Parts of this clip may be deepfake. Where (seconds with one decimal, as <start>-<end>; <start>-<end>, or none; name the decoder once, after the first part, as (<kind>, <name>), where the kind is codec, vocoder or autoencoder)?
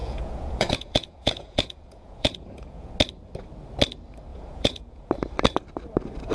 0.0-2.9 (vocoder, Vocos); 4.3-5.1